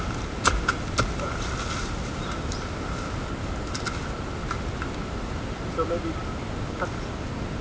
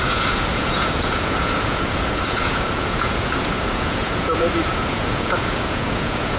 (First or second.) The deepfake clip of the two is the second